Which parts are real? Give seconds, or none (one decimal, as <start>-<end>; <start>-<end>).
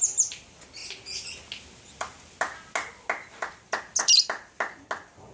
0.0-5.3